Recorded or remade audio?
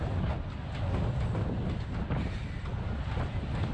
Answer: recorded